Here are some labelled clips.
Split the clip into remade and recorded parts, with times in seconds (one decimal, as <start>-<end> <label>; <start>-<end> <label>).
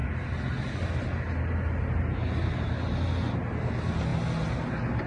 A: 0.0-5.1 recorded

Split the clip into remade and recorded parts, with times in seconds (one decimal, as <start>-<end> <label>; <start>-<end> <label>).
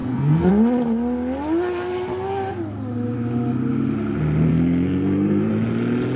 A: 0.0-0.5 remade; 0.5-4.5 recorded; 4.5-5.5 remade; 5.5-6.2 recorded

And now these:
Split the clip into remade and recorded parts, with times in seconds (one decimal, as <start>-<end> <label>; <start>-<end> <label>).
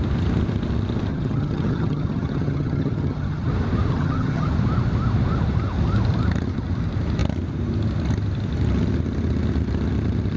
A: 0.0-1.1 recorded; 1.1-3.5 remade; 3.5-3.9 recorded; 3.9-4.5 remade; 4.5-10.4 recorded